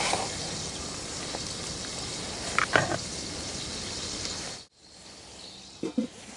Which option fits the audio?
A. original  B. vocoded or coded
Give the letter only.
A